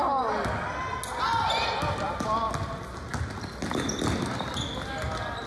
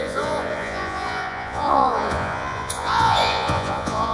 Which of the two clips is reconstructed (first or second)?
second